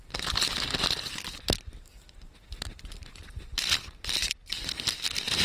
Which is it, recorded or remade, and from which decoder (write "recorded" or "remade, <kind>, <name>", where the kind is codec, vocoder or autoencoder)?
recorded